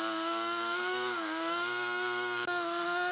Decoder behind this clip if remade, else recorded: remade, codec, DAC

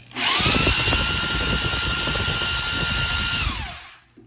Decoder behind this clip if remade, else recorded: recorded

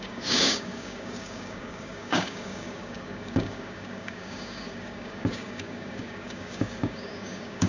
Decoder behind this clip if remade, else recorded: remade, codec, DAC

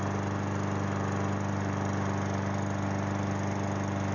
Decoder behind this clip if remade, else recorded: recorded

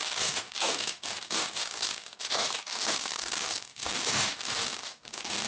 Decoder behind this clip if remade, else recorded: remade, codec, DAC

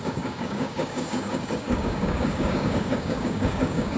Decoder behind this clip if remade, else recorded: remade, codec, DAC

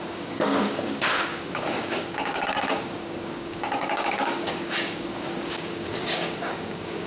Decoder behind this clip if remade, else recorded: remade, codec, DAC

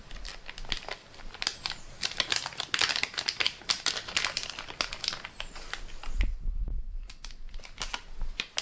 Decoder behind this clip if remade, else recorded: recorded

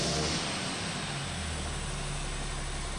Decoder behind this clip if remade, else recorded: recorded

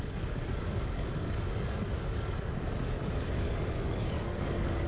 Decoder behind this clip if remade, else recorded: remade, codec, DAC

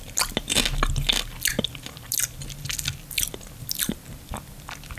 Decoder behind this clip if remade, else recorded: recorded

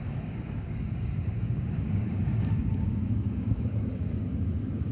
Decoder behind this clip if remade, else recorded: remade, codec, DAC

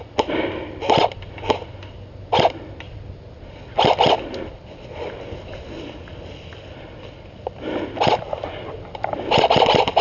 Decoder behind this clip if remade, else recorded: recorded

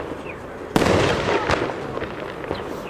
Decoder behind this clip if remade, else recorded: recorded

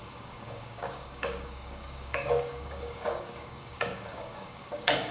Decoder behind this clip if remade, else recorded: remade, codec, DAC